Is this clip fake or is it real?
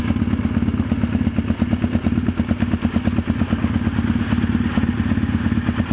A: real